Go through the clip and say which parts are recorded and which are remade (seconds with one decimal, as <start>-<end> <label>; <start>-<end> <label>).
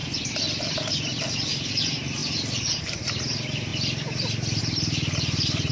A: 0.0-0.6 recorded; 0.6-3.7 remade; 3.7-4.6 recorded; 4.6-5.7 remade